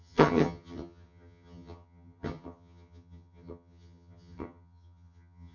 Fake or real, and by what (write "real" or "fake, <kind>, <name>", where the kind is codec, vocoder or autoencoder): fake, vocoder, HiFi-GAN